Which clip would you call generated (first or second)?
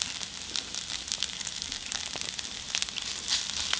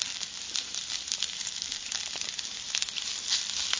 second